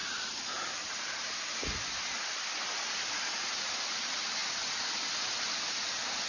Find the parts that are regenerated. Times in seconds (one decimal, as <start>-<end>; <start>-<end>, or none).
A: none